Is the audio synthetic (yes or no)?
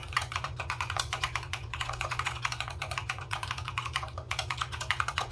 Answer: yes